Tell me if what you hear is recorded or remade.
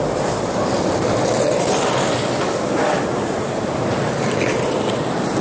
recorded